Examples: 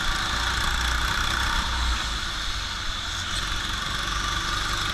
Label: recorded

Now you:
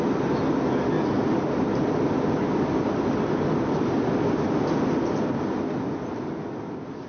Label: recorded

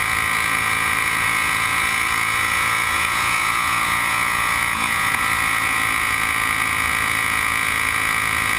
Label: remade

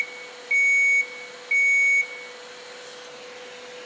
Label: recorded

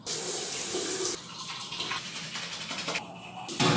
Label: remade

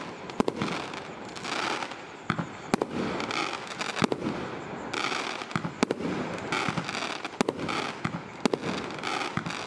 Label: recorded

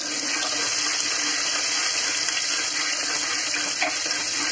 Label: recorded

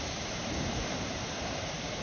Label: remade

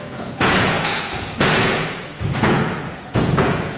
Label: remade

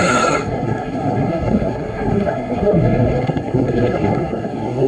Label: remade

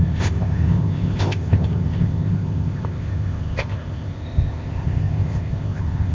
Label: remade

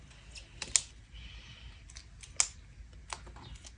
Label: recorded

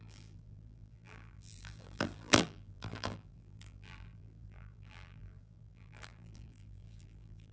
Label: remade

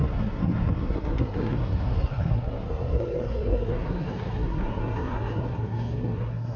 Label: remade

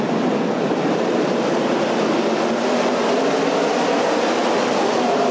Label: recorded